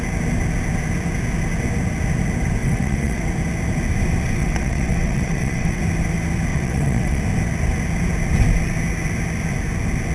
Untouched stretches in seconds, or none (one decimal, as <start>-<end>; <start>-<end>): 0.0-2.6; 3.2-4.4; 5.8-6.5; 7.2-10.1